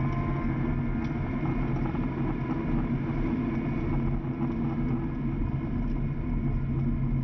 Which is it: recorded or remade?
recorded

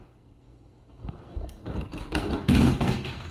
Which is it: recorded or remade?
remade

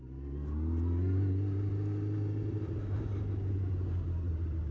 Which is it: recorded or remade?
recorded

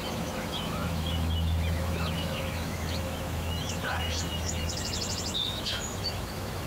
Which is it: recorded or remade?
remade